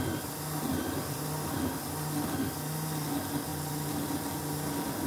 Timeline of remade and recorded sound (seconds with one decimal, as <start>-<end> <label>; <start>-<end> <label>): 0.0-0.7 recorded; 0.7-1.2 remade; 1.2-3.5 recorded; 3.5-4.3 remade; 4.3-5.1 recorded